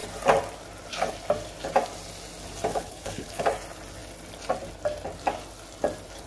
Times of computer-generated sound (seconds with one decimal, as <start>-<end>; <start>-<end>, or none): 2.7-3.4